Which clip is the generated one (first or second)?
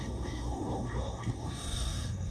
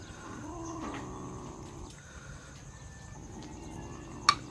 first